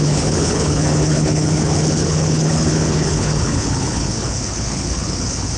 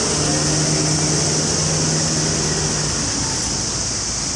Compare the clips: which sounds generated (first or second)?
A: first